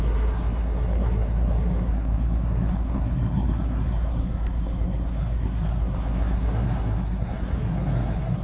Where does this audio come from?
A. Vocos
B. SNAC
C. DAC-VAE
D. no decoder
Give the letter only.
B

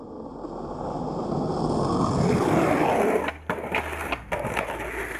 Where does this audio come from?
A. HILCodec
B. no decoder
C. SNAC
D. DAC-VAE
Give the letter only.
B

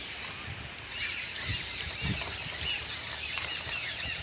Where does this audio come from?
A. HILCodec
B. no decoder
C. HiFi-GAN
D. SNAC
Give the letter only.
B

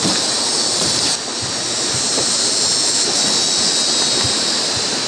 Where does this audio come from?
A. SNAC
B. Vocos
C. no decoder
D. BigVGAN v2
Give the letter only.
C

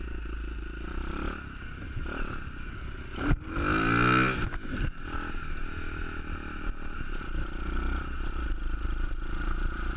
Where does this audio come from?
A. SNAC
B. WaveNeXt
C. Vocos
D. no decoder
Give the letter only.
D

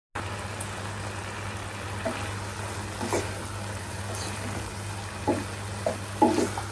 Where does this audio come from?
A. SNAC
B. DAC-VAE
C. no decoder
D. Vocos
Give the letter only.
C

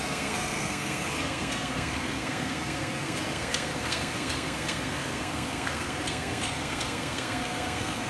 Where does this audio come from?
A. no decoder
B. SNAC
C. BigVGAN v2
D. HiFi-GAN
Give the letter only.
B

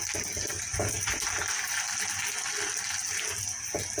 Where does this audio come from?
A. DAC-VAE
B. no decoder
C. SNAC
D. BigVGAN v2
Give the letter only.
B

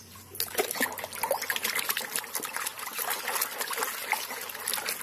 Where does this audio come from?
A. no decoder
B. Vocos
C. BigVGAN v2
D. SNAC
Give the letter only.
A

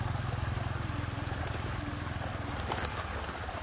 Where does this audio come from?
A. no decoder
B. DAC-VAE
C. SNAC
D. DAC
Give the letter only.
A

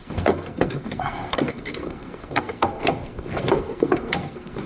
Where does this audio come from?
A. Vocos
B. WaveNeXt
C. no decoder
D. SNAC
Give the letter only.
D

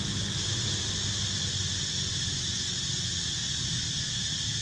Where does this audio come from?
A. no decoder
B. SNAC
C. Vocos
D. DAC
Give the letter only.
A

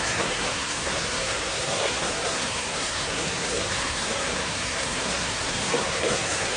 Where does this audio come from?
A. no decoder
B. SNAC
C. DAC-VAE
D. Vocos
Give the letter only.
B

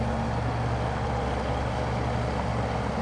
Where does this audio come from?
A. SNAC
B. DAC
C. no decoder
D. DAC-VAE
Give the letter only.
C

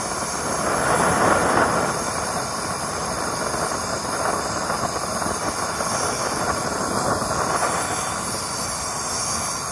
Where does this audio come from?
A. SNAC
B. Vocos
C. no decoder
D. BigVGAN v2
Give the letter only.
C